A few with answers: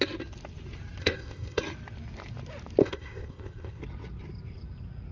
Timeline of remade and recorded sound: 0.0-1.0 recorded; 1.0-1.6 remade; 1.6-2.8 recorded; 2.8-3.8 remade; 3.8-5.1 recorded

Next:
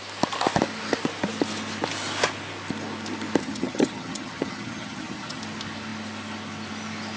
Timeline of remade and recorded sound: 0.0-3.4 recorded; 3.4-5.4 remade; 5.4-7.2 recorded

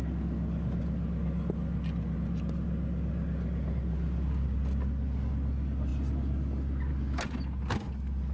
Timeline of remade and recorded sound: 0.0-8.3 recorded

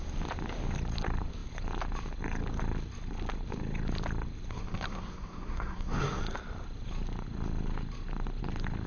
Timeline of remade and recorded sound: 0.0-4.5 recorded; 4.5-6.2 remade; 6.2-8.9 recorded

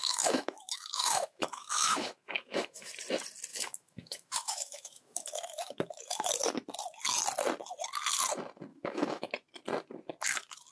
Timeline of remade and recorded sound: 0.0-2.9 remade; 2.9-3.5 recorded; 3.5-6.3 remade; 6.3-8.7 recorded; 8.7-9.3 remade; 9.3-10.7 recorded

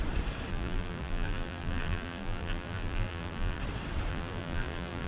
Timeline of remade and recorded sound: 0.0-0.5 recorded; 0.5-3.6 remade; 3.6-4.1 recorded; 4.1-5.1 remade

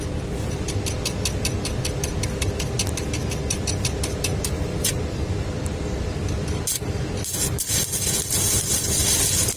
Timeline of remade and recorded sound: 0.0-9.6 recorded